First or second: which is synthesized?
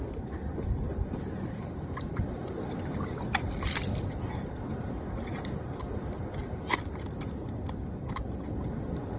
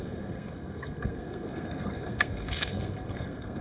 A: second